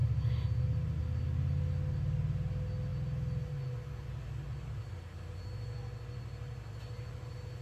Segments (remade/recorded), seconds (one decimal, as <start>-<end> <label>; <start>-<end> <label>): 0.0-7.6 recorded